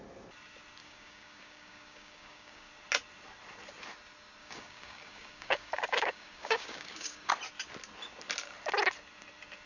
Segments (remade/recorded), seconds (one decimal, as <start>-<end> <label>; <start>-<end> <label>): 0.0-0.8 recorded; 0.8-2.7 remade; 2.7-4.4 recorded; 4.4-7.3 remade; 7.3-9.7 recorded